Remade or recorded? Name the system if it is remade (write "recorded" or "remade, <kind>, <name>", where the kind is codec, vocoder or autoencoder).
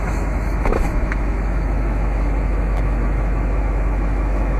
remade, autoencoder, DAC-VAE